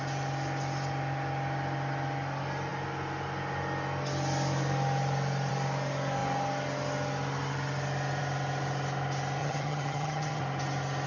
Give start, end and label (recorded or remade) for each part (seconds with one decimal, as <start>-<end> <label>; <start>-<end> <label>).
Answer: 0.0-9.4 recorded; 9.4-10.4 remade; 10.4-11.1 recorded